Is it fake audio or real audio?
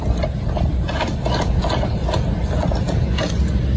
real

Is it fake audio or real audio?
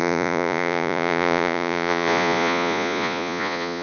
fake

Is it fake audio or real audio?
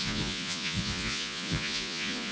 fake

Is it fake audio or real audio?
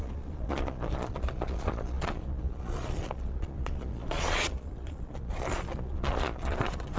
fake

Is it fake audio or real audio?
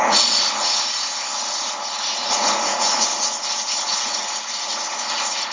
fake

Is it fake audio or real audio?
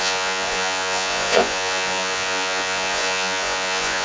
fake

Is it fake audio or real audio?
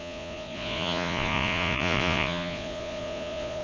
fake